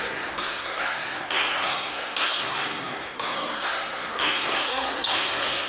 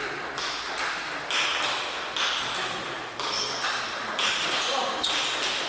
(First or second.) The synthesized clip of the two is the first